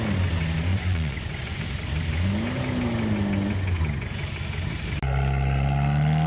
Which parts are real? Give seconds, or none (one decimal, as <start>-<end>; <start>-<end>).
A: 0.0-0.7; 1.6-6.3

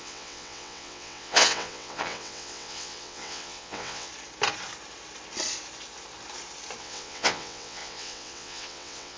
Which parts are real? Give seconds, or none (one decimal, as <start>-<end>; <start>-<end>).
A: 4.1-6.8